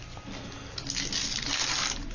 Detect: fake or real real